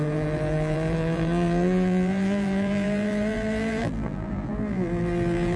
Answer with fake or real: fake